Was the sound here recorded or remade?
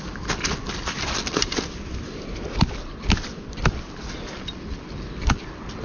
recorded